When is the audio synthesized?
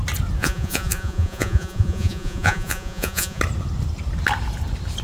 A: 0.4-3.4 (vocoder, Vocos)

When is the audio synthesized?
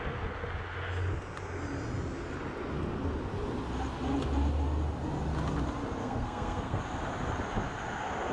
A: 6.0-6.8 (codec, SNAC)